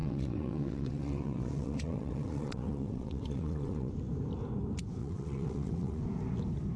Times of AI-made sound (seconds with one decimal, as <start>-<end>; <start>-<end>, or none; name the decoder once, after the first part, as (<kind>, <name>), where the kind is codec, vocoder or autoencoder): 0.0-3.9 (vocoder, WaveNeXt); 5.0-6.0